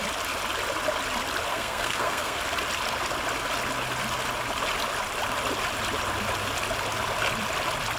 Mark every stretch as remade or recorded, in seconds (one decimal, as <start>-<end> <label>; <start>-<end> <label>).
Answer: 0.0-1.5 recorded; 1.5-2.4 remade; 2.4-8.0 recorded